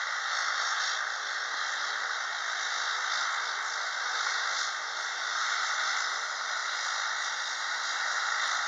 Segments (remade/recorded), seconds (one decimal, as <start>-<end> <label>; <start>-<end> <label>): 0.0-8.7 recorded